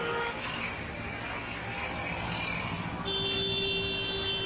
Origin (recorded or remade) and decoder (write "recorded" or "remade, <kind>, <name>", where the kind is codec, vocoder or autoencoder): recorded